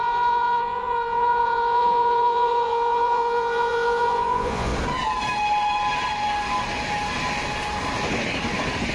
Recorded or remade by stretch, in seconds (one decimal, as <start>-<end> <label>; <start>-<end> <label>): 0.0-4.7 remade; 4.7-8.9 recorded